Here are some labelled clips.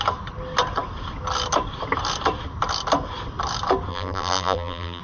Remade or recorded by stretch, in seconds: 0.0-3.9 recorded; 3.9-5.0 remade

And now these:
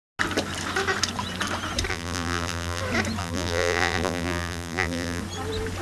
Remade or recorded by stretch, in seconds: 0.0-1.9 recorded; 1.9-2.8 remade; 2.8-3.2 recorded; 3.2-5.2 remade; 5.2-5.8 recorded

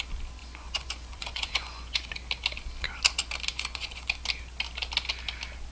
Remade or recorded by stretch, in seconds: 0.0-0.4 recorded; 0.4-2.1 remade; 2.1-3.5 recorded; 3.5-4.1 remade; 4.1-5.7 recorded

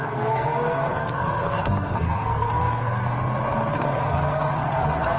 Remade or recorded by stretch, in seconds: 0.0-3.1 remade; 3.1-3.7 recorded; 3.7-5.2 remade

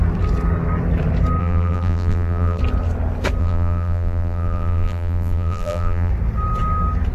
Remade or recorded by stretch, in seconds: 0.0-1.4 recorded; 1.4-2.6 remade; 2.6-3.4 recorded; 3.4-6.1 remade; 6.1-7.1 recorded

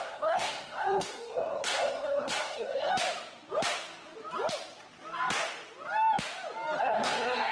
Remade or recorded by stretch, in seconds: 0.0-2.9 remade; 2.9-6.8 recorded; 6.8-7.5 remade

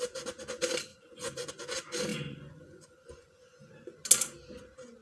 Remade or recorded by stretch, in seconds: 0.0-0.9 recorded; 0.9-1.5 remade; 1.5-2.1 recorded; 2.1-3.7 remade; 3.7-5.0 recorded

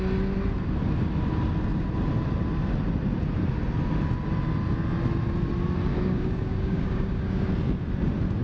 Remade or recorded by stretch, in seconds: 0.0-5.9 recorded; 5.9-7.5 remade; 7.5-8.4 recorded